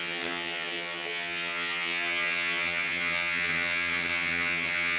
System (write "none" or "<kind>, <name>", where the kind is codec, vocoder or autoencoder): vocoder, HiFi-GAN